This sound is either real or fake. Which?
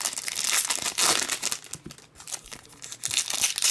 real